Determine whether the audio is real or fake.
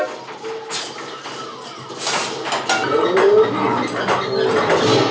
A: real